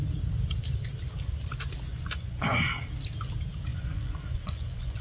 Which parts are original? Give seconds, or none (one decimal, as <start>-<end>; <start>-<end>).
0.0-1.9; 2.7-3.7